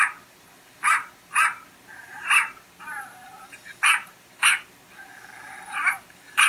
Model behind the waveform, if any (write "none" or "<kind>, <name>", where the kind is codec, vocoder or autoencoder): none